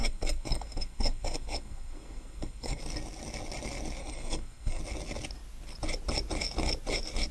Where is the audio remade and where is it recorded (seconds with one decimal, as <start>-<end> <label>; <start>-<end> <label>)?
0.0-2.8 remade; 2.8-4.0 recorded; 4.0-4.8 remade; 4.8-7.3 recorded